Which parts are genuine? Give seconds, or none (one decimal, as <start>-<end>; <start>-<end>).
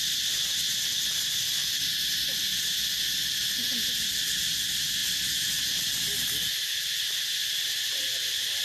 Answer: 0.0-8.6